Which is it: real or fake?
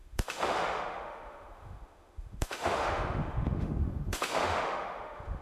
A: fake